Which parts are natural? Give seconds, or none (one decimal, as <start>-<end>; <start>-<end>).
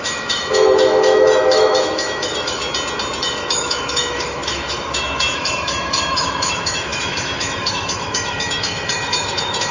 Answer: 2.6-3.2